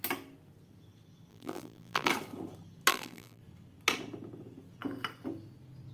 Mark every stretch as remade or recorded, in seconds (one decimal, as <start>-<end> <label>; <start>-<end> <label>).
0.0-1.3 recorded; 1.3-2.1 remade; 2.1-2.9 recorded; 2.9-3.4 remade; 3.4-5.9 recorded

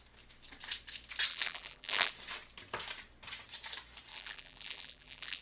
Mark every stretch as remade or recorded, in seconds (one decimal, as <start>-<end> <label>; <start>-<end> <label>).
0.0-1.3 recorded; 1.3-2.1 remade; 2.1-4.1 recorded; 4.1-5.4 remade

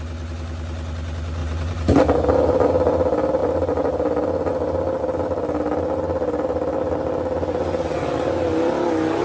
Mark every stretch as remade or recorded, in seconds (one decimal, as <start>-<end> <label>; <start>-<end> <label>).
0.0-1.4 recorded; 1.4-2.0 remade; 2.0-9.2 recorded

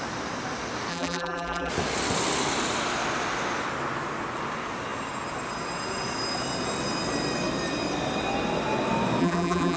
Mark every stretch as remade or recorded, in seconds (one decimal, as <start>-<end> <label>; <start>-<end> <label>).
0.0-0.9 recorded; 0.9-1.7 remade; 1.7-9.2 recorded; 9.2-9.8 remade

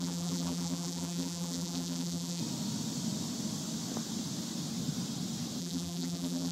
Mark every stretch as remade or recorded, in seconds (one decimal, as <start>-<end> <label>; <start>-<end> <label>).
0.0-2.4 remade; 2.4-5.6 recorded; 5.6-6.5 remade

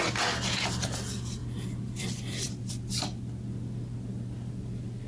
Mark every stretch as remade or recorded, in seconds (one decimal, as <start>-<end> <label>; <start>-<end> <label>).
0.0-1.4 recorded; 1.4-2.7 remade; 2.7-5.1 recorded